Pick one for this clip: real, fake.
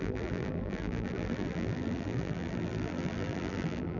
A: fake